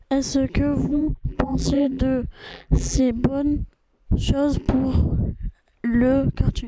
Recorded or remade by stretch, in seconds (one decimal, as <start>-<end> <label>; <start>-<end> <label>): 0.0-0.8 recorded; 0.8-2.0 remade; 2.0-2.5 recorded; 2.5-3.0 remade; 3.0-6.7 recorded